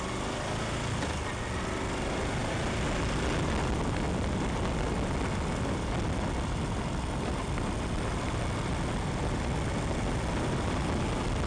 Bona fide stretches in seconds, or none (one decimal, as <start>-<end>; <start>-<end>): 0.0-11.5